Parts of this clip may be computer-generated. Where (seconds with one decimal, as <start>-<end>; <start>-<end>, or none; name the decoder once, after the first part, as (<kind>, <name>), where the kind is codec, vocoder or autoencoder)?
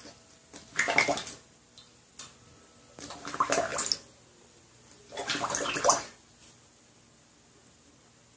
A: none